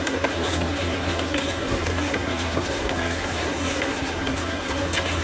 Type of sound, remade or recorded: remade